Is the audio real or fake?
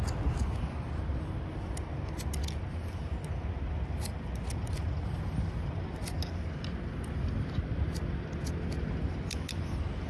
real